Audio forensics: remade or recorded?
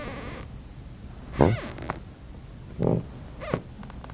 recorded